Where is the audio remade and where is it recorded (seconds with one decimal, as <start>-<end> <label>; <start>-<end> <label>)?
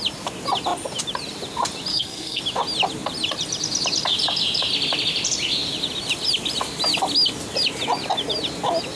0.0-1.9 recorded; 1.9-2.4 remade; 2.4-9.0 recorded